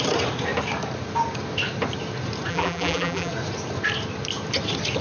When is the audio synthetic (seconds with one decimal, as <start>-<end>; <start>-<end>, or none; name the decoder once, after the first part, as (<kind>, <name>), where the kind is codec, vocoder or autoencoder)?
2.5-3.3 (vocoder, BigVGAN v2)